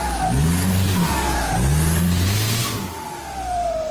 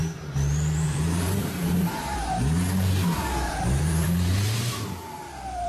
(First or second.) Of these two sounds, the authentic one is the first